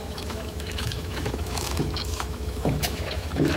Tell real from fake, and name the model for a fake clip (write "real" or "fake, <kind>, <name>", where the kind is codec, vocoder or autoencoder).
fake, autoencoder, DAC-VAE